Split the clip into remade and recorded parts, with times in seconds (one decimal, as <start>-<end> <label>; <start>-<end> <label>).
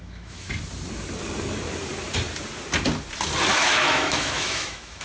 0.0-0.5 remade; 0.5-3.5 recorded; 3.5-5.0 remade